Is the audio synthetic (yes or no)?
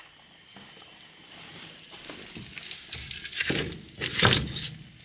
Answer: no